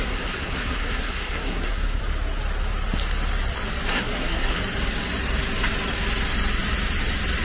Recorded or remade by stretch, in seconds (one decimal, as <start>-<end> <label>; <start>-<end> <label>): 0.0-2.0 remade; 2.0-3.9 recorded; 3.9-4.6 remade; 4.6-7.4 recorded